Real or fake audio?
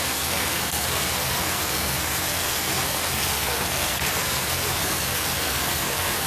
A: fake